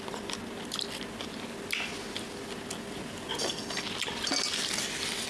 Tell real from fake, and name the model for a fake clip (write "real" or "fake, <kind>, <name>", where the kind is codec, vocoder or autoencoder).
real